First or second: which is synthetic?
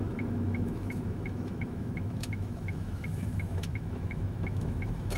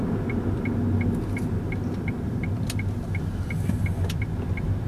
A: first